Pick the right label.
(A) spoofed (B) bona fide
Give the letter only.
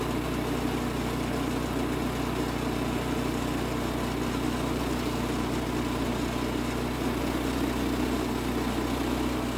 B